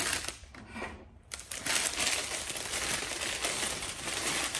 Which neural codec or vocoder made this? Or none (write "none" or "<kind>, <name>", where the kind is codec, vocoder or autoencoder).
none